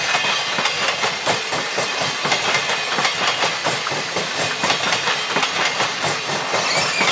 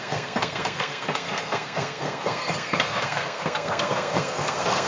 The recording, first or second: first